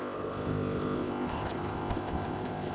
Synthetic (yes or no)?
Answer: yes